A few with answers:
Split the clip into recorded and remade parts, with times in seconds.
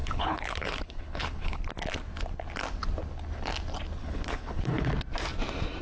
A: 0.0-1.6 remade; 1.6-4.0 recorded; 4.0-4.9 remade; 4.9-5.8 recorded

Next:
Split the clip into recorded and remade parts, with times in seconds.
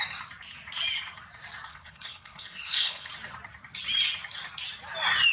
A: 0.0-1.7 recorded; 1.7-3.1 remade; 3.1-5.3 recorded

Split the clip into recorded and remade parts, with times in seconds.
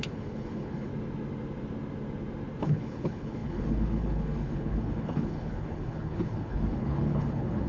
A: 0.0-0.9 remade; 0.9-2.6 recorded; 2.6-7.7 remade